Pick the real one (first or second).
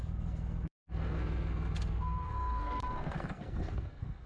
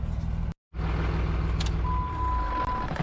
second